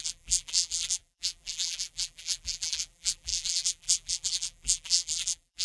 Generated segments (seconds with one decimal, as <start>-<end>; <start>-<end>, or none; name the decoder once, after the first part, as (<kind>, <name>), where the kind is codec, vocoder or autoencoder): 0.0-5.6 (vocoder, BigVGAN v2)

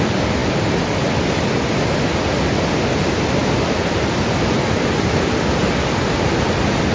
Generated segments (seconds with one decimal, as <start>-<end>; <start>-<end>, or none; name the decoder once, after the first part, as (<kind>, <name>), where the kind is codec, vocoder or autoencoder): none

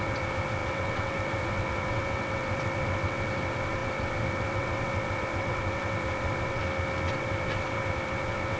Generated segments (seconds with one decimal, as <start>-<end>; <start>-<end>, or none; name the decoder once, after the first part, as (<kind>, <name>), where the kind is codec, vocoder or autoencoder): 0.0-6.6 (vocoder, WaveNeXt); 7.1-8.6